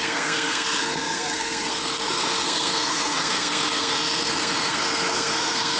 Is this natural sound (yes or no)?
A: no